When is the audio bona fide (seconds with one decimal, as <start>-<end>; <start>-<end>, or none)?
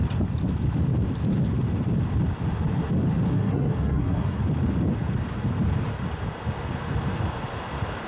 0.0-3.3; 4.4-8.1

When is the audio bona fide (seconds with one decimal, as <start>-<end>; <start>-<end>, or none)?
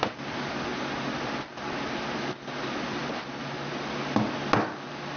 0.0-5.2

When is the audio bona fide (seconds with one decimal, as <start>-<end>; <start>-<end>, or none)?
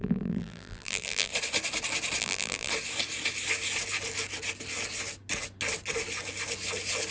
1.3-2.2; 2.7-7.1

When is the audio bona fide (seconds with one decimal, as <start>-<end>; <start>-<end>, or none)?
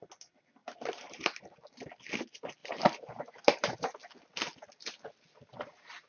0.0-0.6; 1.4-2.6; 3.8-6.1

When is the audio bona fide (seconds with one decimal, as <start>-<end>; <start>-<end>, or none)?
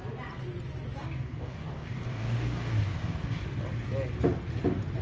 0.0-1.0; 3.4-5.0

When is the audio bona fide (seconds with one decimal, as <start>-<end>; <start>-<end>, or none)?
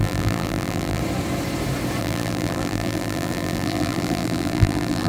1.0-2.0